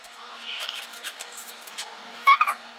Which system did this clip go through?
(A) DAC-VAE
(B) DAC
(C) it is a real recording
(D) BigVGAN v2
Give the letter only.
B